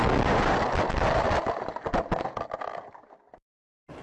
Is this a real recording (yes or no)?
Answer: yes